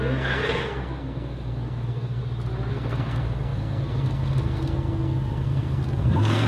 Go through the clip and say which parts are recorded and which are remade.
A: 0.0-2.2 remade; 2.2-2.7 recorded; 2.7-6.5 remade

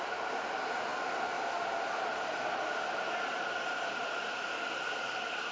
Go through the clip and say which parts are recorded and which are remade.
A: 0.0-5.5 recorded

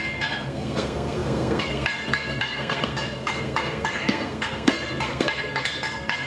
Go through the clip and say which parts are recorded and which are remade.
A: 0.0-6.3 remade

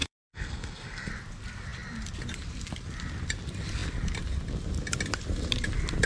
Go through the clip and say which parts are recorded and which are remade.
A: 0.0-1.1 remade; 1.1-6.1 recorded

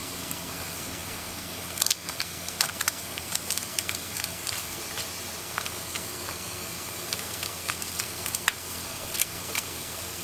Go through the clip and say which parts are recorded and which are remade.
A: 0.0-4.8 remade; 4.8-5.4 recorded; 5.4-10.2 remade

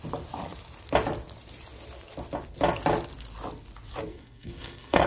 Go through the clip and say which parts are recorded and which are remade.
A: 0.0-4.1 recorded; 4.1-5.1 remade